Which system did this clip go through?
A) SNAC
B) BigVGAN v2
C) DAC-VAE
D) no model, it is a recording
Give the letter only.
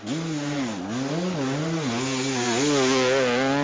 D